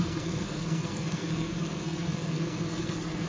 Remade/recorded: remade